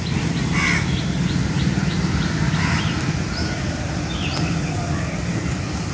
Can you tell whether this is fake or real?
real